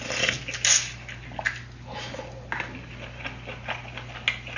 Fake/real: real